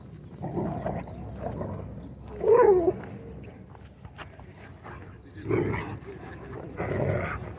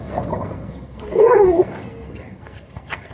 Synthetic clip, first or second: second